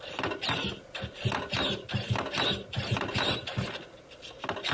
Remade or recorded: recorded